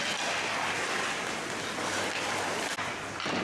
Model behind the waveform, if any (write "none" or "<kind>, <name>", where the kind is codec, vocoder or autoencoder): none